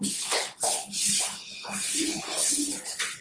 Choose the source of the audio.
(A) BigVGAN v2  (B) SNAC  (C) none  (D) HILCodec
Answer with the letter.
D